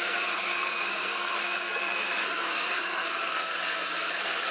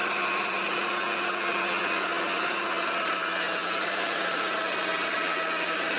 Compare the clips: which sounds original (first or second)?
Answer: second